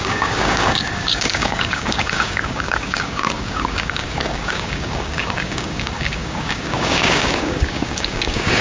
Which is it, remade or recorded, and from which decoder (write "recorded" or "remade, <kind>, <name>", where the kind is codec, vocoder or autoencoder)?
remade, codec, DAC